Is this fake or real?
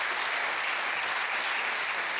real